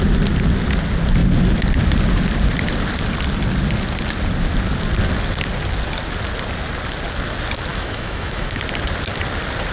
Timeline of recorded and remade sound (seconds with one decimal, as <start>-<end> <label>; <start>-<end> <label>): 0.0-7.7 recorded; 7.7-8.6 remade; 8.6-9.7 recorded